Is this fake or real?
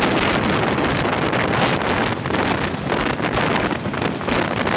real